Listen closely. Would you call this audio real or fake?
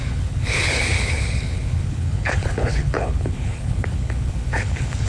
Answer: fake